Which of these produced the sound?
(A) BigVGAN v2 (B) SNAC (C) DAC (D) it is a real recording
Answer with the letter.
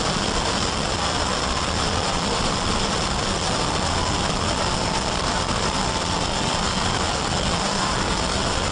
D